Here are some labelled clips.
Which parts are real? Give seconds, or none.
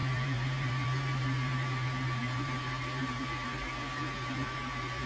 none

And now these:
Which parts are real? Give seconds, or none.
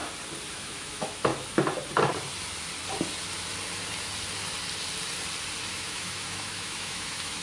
0.0-0.5; 1.3-5.7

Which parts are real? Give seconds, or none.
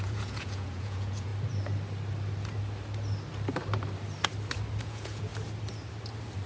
1.3-4.8; 5.3-6.5